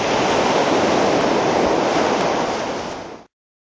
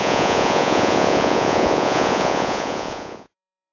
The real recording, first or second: first